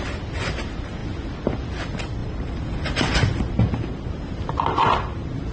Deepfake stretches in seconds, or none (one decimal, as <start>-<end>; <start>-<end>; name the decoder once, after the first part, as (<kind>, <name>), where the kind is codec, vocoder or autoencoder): 2.2-3.6 (vocoder, BigVGAN v2)